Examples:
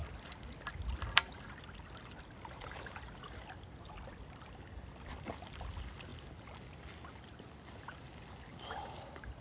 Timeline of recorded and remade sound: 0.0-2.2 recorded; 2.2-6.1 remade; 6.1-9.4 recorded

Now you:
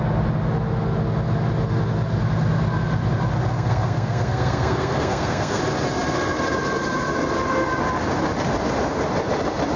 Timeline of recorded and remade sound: 0.0-3.5 recorded; 3.5-5.6 remade; 5.6-9.8 recorded

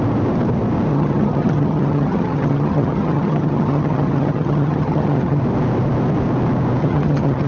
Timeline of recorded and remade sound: 0.0-0.9 recorded; 0.9-5.4 remade; 5.4-6.8 recorded; 6.8-7.5 remade

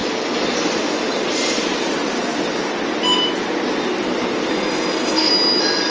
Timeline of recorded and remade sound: 0.0-4.5 recorded; 4.5-5.3 remade; 5.3-5.9 recorded

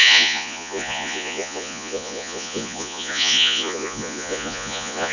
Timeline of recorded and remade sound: 0.0-5.1 remade

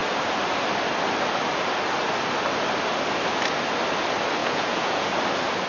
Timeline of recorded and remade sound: 0.0-4.4 recorded; 4.4-5.1 remade; 5.1-5.7 recorded

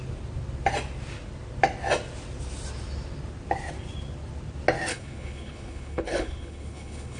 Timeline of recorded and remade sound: 0.0-4.9 recorded; 4.9-7.2 remade

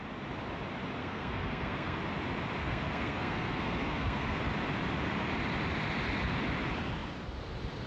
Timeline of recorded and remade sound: 0.0-1.0 recorded; 1.0-2.0 remade; 2.0-2.6 recorded; 2.6-4.4 remade; 4.4-7.9 recorded